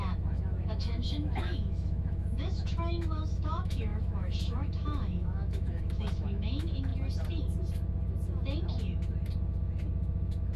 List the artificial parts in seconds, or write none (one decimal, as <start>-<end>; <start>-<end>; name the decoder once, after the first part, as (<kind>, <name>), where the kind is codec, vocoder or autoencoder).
0.0-6.9 (autoencoder, DAC-VAE)